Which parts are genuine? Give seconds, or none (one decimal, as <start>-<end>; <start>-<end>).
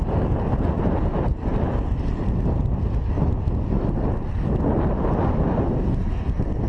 0.0-6.7